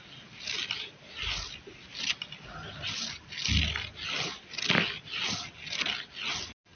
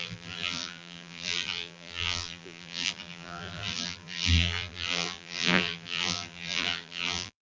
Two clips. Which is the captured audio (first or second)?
first